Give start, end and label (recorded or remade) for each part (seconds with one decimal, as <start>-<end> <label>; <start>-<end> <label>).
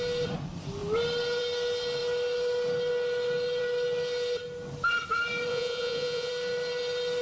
0.0-5.5 recorded; 5.5-6.3 remade; 6.3-7.2 recorded